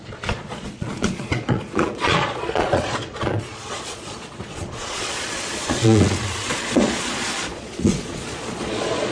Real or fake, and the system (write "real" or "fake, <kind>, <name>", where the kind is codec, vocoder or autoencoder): fake, vocoder, Vocos